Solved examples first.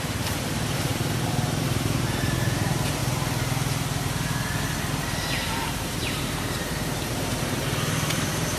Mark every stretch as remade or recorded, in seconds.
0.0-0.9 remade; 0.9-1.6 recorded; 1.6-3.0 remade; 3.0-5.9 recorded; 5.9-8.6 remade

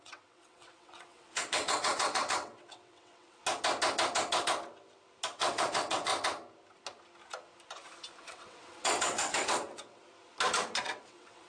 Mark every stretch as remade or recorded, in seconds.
0.0-3.4 remade; 3.4-5.4 recorded; 5.4-6.1 remade; 6.1-8.2 recorded; 8.2-10.0 remade; 10.0-10.8 recorded; 10.8-11.5 remade

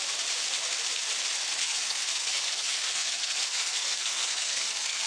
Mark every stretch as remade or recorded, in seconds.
0.0-1.6 recorded; 1.6-5.1 remade

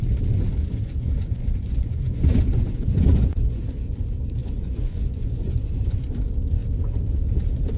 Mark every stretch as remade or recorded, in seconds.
0.0-0.6 recorded; 0.6-3.6 remade; 3.6-4.4 recorded; 4.4-5.7 remade; 5.7-7.8 recorded

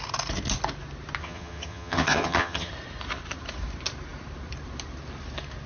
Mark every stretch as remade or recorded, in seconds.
0.0-1.2 recorded; 1.2-2.7 remade; 2.7-5.7 recorded

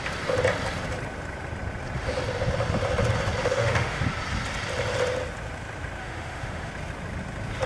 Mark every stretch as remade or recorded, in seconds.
0.0-3.4 recorded; 3.4-4.0 remade; 4.0-6.0 recorded; 6.0-6.7 remade; 6.7-7.7 recorded

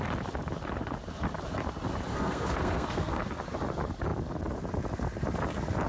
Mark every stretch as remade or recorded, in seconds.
0.0-2.1 recorded; 2.1-3.3 remade; 3.3-5.9 recorded